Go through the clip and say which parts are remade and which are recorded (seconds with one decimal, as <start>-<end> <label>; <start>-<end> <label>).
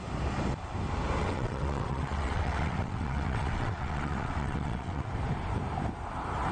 0.0-1.2 recorded; 1.2-5.1 remade; 5.1-6.5 recorded